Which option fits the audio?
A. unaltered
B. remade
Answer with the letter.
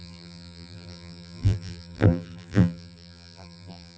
B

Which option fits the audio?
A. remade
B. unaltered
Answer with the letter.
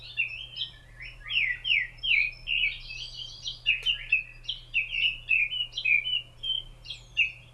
B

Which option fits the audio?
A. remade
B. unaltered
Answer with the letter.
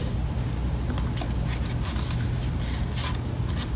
B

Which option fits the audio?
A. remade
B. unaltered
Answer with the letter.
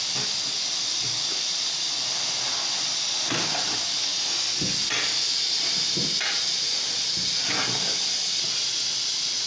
B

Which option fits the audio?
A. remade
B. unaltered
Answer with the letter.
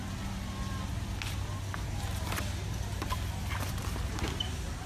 B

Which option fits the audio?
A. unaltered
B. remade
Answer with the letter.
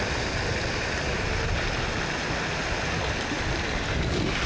A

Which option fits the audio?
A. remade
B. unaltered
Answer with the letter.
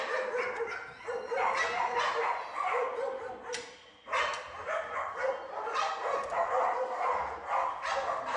B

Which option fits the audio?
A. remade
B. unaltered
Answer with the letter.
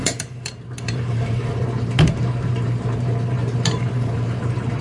A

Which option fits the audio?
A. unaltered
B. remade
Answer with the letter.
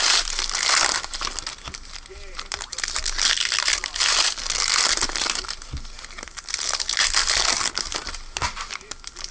A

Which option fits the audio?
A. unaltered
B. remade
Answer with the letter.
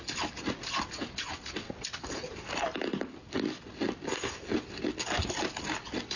A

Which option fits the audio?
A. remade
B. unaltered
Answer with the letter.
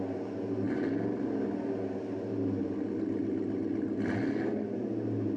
B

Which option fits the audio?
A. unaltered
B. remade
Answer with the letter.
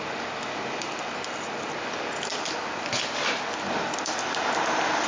A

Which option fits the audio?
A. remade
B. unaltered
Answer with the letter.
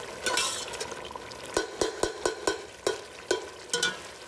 B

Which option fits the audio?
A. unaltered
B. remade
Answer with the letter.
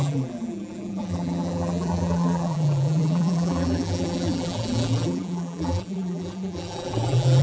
B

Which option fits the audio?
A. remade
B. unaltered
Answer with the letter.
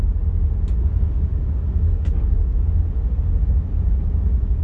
B